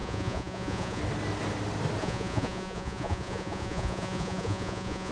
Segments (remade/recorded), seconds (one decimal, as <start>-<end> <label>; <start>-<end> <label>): 0.0-1.0 remade; 1.0-2.0 recorded; 2.0-5.1 remade